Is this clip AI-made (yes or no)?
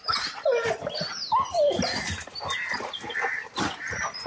no